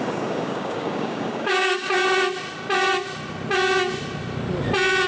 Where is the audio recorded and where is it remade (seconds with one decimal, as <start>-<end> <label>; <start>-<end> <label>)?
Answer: 0.0-2.0 remade; 2.0-5.1 recorded